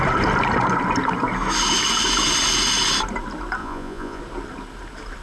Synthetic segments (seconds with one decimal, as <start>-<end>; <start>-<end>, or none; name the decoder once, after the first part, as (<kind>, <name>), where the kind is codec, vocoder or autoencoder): 3.6-4.2 (vocoder, Vocos)

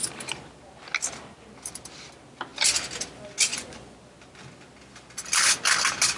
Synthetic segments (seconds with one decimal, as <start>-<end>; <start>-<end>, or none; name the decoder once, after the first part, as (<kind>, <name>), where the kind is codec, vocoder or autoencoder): 3.5-4.0 (vocoder, Vocos)

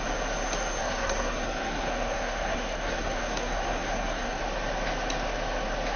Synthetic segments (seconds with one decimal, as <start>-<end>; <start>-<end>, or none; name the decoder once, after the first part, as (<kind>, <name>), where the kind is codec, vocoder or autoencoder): 0.8-4.4 (codec, SNAC)